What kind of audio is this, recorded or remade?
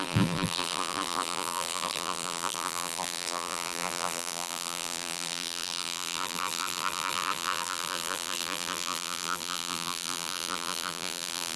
remade